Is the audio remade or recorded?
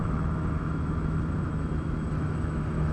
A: remade